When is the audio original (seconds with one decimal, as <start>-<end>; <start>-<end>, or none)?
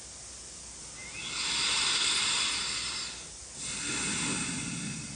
0.0-5.2